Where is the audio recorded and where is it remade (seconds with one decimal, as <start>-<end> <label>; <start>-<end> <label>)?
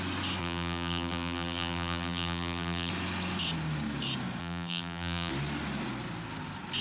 0.0-0.4 recorded; 0.4-2.9 remade; 2.9-4.4 recorded; 4.4-5.3 remade; 5.3-6.8 recorded